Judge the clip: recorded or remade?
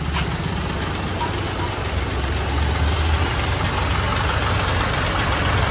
recorded